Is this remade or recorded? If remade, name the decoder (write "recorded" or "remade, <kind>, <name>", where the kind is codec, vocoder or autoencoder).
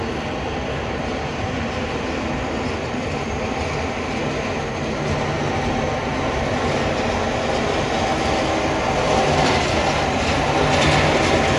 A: recorded